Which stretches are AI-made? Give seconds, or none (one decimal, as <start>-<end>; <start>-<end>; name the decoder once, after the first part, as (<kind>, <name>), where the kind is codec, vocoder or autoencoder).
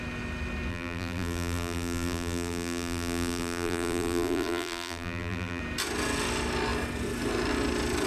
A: 0.7-5.6 (vocoder, BigVGAN v2)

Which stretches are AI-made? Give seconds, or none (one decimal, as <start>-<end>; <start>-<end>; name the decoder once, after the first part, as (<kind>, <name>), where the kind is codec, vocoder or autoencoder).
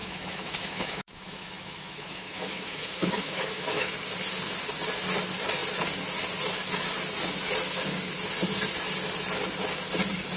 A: 0.0-3.9 (autoencoder, DAC-VAE)